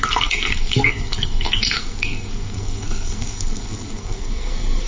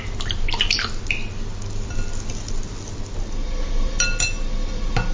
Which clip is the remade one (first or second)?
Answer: first